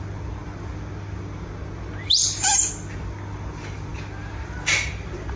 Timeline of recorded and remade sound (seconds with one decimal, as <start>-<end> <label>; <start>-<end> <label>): 0.0-5.4 recorded